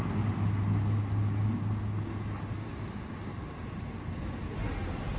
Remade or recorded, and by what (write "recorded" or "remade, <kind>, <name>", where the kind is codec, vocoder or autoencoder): recorded